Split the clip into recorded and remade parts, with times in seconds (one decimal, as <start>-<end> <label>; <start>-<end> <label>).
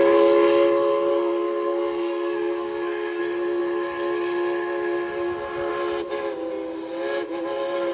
0.0-1.1 recorded; 1.1-3.2 remade; 3.2-7.9 recorded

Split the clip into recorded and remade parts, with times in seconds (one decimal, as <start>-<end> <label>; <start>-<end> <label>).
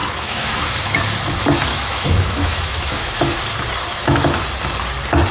0.0-1.0 remade; 1.0-1.7 recorded; 1.7-3.4 remade; 3.4-3.9 recorded; 3.9-4.4 remade; 4.4-5.3 recorded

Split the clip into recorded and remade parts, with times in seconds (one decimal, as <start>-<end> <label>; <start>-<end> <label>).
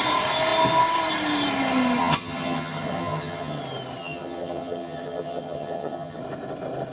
0.0-2.0 recorded; 2.0-3.6 remade; 3.6-4.0 recorded; 4.0-6.2 remade; 6.2-6.9 recorded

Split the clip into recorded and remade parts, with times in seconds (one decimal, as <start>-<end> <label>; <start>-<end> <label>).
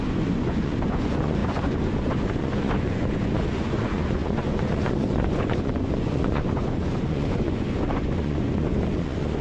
0.0-9.4 remade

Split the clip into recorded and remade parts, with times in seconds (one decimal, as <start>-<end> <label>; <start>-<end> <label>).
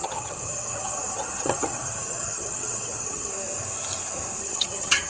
0.0-3.3 remade; 3.3-4.4 recorded; 4.4-5.1 remade